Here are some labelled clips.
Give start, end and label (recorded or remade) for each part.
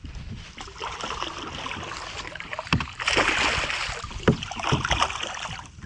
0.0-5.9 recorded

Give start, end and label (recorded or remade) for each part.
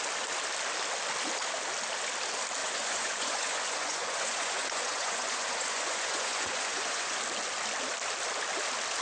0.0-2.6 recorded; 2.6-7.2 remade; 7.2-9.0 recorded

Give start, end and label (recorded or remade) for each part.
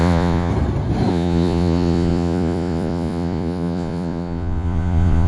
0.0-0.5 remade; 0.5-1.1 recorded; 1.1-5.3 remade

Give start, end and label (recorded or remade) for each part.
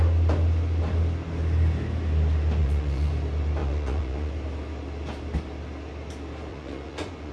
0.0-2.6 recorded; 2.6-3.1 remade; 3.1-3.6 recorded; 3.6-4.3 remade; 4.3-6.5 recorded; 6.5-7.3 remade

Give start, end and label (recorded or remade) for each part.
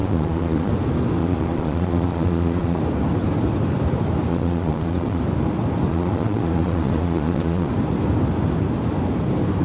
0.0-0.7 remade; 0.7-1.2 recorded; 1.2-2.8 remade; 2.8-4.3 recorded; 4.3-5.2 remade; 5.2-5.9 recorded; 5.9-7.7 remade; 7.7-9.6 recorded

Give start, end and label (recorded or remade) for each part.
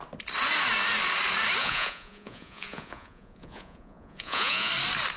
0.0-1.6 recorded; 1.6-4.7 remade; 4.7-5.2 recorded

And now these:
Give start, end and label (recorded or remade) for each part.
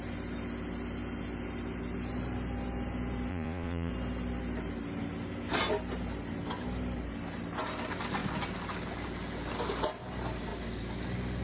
0.0-3.3 recorded; 3.3-3.9 remade; 3.9-11.4 recorded